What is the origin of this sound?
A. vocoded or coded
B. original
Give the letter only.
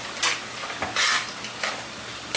B